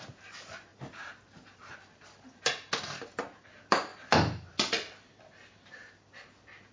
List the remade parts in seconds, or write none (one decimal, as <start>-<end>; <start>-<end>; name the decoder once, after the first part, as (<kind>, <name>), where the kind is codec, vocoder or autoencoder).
0.7-1.7 (vocoder, BigVGAN v2)